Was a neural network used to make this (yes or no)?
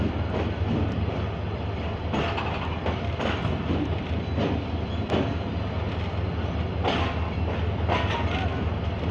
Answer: no